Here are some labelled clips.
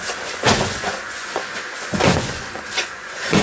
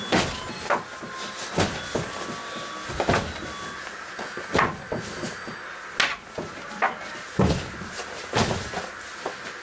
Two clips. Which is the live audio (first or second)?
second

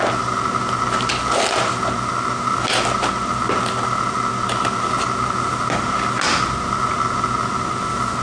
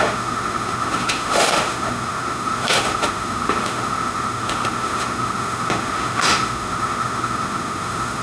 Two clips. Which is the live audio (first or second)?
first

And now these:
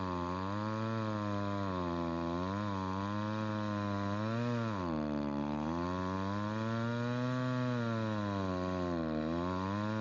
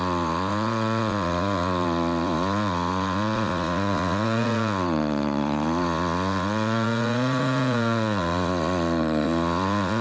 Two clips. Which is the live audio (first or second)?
first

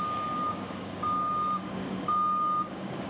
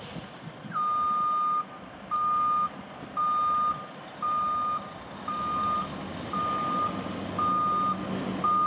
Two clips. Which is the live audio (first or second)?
second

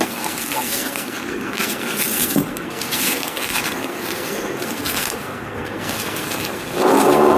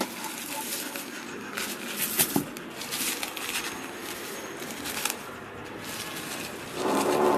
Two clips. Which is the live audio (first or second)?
second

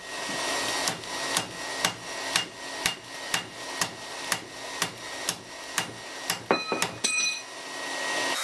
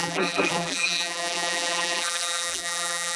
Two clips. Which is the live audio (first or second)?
first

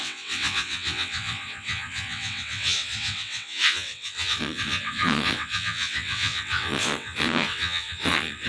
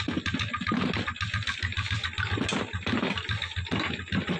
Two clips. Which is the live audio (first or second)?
second